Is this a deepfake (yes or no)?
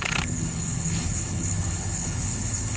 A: yes